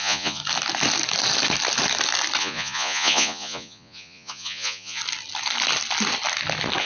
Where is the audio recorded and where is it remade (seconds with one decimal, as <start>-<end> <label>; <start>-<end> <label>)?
0.0-0.4 remade; 0.4-2.4 recorded; 2.4-5.0 remade; 5.0-6.8 recorded